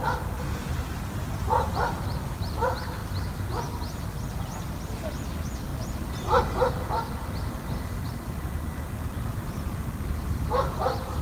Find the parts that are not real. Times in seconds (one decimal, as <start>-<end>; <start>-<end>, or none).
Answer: 9.0-10.5